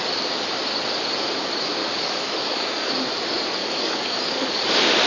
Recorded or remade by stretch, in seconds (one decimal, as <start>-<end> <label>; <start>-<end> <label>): 0.0-1.8 recorded; 1.8-2.9 remade; 2.9-3.6 recorded; 3.6-4.6 remade; 4.6-5.1 recorded